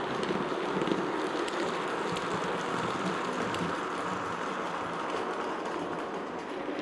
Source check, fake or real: real